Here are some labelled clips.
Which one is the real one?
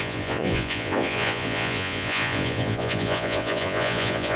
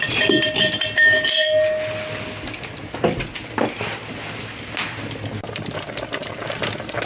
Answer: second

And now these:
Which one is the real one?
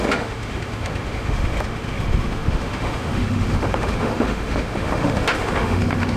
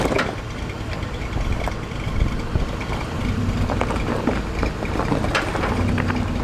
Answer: second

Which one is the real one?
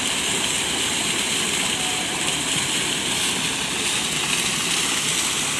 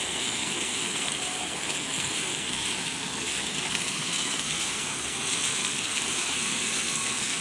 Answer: first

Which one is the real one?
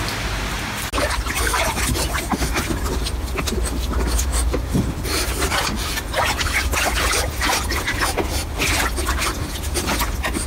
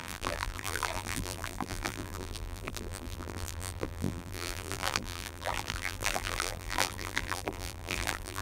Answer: first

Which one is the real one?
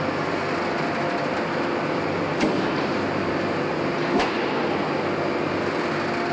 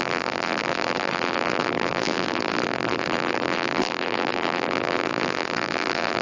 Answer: first